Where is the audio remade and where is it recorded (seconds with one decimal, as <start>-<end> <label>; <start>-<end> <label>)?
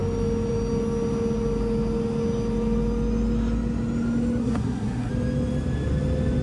0.0-4.4 recorded; 4.4-5.1 remade; 5.1-6.4 recorded